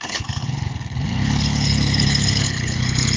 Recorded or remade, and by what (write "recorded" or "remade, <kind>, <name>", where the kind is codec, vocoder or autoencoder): remade, codec, HILCodec